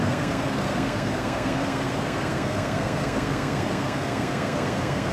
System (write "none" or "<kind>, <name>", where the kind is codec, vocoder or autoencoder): codec, SNAC